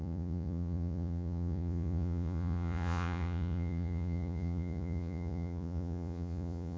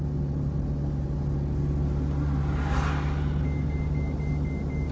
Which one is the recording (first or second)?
second